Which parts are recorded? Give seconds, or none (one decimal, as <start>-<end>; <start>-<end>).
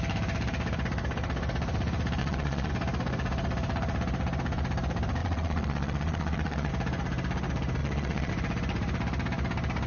0.0-2.2; 2.7-5.2; 6.7-7.8; 8.3-9.9